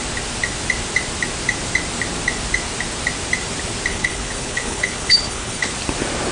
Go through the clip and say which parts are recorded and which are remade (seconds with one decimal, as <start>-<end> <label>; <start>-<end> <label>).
0.0-3.9 recorded; 3.9-5.7 remade; 5.7-6.3 recorded